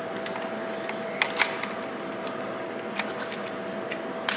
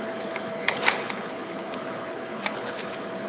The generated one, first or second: second